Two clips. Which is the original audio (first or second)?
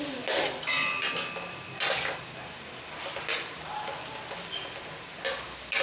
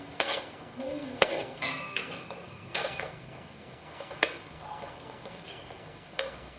first